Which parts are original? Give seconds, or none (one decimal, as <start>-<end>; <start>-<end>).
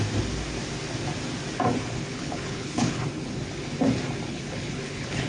0.0-2.1; 3.0-4.3